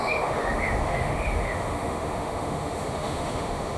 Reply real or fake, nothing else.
fake